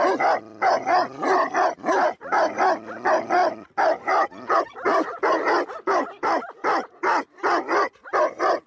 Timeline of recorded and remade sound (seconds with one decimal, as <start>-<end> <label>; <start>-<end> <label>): 0.0-8.7 recorded